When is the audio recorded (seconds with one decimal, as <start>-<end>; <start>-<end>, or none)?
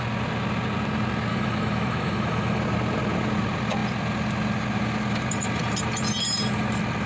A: 0.0-1.3; 2.6-7.1